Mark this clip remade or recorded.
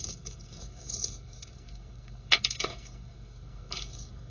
remade